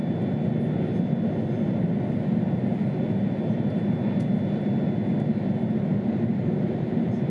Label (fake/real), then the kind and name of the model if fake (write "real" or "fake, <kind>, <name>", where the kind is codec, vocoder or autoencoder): real